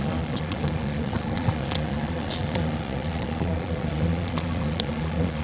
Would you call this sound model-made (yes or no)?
yes